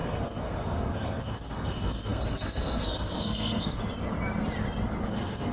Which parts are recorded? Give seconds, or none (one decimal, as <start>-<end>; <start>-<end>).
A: 3.8-5.0